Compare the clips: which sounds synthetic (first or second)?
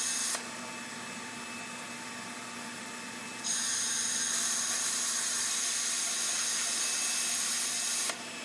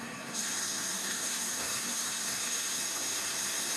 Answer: second